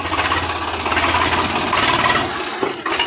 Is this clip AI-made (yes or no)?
no